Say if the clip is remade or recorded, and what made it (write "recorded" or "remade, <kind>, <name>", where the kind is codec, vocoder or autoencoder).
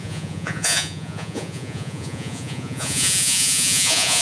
remade, vocoder, Vocos